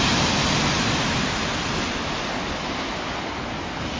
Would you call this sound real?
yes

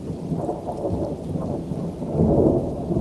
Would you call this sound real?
yes